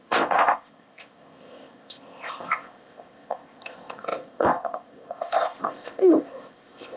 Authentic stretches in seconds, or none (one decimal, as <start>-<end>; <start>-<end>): none